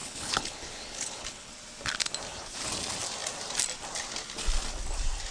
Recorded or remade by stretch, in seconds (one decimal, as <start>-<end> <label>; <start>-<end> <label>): 0.0-1.5 remade; 1.5-5.3 recorded